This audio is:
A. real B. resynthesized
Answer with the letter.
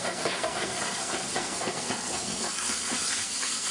B